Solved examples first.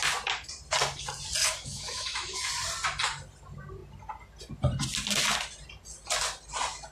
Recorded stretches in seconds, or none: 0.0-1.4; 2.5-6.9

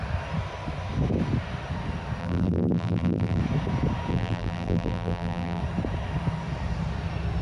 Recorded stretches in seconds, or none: 0.0-2.2; 3.4-4.1; 5.6-7.4

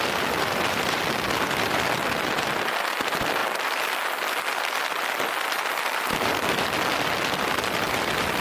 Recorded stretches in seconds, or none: 0.0-8.4

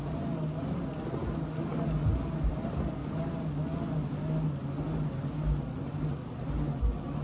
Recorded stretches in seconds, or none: 0.0-7.2

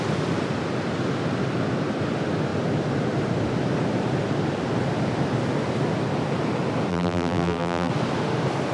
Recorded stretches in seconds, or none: 0.0-6.9; 7.9-8.7

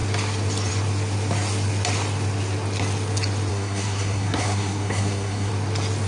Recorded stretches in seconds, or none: 0.0-3.5; 5.5-6.1

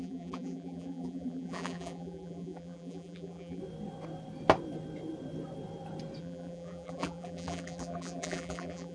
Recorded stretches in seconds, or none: 3.6-6.2

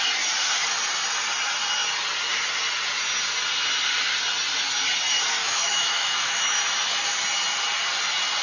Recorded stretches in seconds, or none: 0.0-5.4; 6.6-8.4